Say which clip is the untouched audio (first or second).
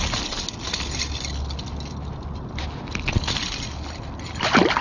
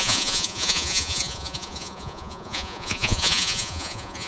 first